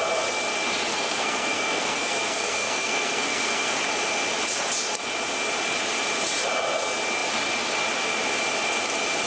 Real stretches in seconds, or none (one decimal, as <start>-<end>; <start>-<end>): 0.0-0.9; 3.8-9.3